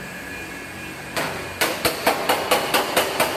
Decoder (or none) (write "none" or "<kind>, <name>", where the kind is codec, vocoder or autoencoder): none